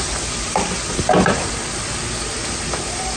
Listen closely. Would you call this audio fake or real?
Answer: real